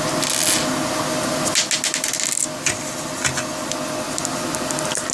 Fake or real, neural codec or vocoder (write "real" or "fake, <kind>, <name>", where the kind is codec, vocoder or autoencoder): real